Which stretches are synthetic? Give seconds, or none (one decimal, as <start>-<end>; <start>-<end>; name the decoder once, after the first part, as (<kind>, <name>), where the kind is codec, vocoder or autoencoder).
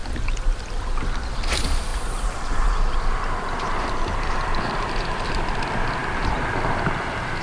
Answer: none